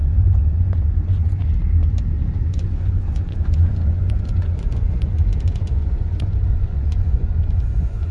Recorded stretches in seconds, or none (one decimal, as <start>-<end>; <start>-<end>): 1.4-2.5